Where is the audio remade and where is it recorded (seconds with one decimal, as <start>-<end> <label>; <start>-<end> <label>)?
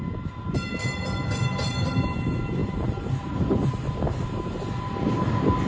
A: 0.0-2.6 recorded; 2.6-3.7 remade; 3.7-5.7 recorded